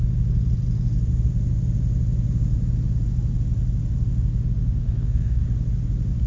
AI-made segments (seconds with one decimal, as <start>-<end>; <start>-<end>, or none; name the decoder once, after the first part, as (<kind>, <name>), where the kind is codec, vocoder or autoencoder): 4.8-5.4 (codec, SNAC)